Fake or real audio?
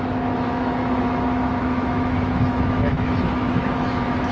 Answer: fake